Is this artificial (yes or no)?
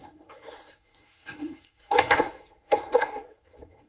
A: yes